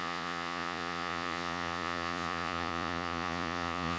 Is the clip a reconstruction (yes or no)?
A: yes